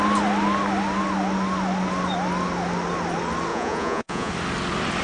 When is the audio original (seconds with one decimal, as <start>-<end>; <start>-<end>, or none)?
0.0-3.5; 4.3-5.0